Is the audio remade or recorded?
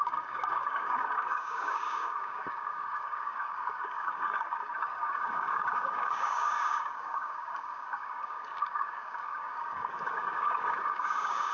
remade